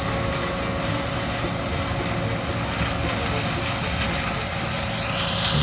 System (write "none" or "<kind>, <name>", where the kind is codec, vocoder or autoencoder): none